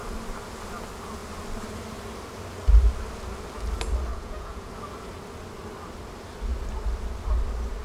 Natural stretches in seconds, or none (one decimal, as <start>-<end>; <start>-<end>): 0.0-4.1; 4.7-7.8